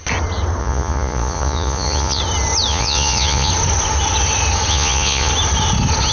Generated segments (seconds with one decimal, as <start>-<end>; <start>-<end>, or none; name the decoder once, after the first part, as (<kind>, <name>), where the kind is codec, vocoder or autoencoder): 0.6-2.2 (vocoder, Vocos); 2.7-3.5; 4.7-5.3